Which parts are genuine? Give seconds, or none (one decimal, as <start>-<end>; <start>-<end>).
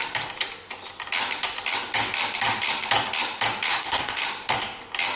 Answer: 0.0-3.7; 4.2-5.2